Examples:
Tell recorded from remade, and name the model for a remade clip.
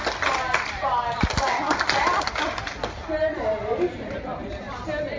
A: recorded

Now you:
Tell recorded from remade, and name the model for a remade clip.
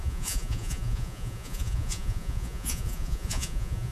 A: remade, vocoder, Vocos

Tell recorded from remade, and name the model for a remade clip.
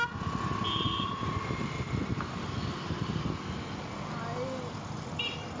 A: recorded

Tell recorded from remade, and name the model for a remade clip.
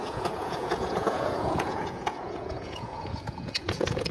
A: remade, vocoder, Vocos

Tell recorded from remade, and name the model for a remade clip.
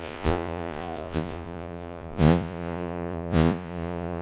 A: remade, vocoder, Vocos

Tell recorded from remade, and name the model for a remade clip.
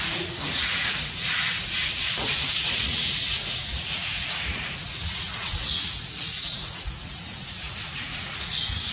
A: remade, vocoder, Vocos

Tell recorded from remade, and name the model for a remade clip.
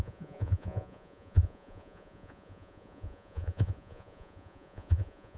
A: remade, vocoder, Vocos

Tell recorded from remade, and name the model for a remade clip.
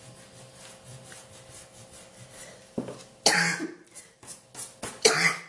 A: recorded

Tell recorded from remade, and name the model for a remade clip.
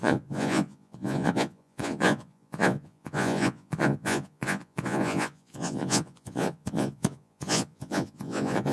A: remade, vocoder, Vocos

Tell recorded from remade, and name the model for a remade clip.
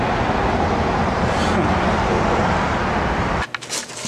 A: recorded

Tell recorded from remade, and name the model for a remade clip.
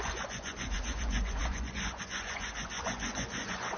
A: remade, vocoder, Vocos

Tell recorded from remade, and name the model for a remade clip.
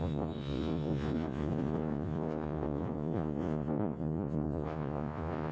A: remade, vocoder, Vocos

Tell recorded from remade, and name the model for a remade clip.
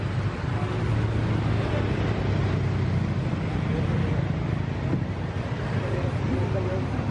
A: recorded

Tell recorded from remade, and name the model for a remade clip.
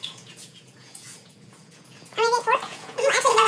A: remade, vocoder, Vocos